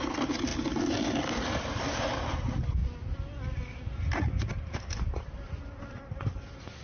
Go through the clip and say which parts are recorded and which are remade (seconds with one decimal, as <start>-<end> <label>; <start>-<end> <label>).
0.0-6.8 recorded